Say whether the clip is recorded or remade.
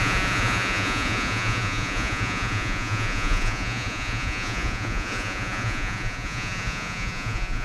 remade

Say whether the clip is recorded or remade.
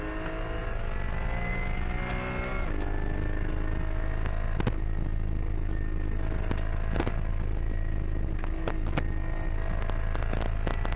recorded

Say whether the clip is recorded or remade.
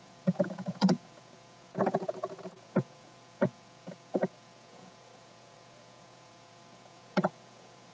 remade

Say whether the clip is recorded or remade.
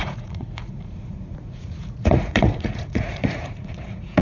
remade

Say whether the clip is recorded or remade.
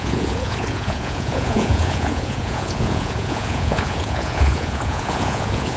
remade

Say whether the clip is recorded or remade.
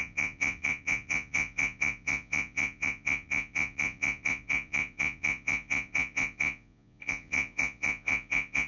remade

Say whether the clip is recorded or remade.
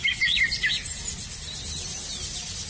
recorded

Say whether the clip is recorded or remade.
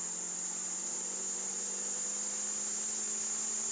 recorded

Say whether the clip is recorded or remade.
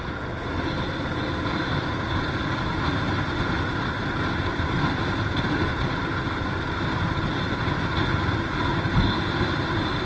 recorded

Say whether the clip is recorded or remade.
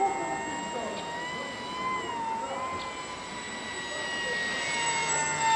recorded